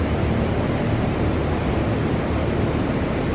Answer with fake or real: real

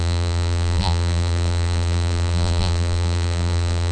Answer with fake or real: fake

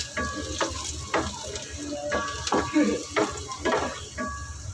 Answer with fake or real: real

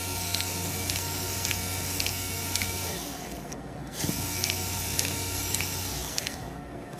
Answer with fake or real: fake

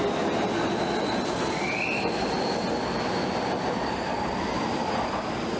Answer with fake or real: real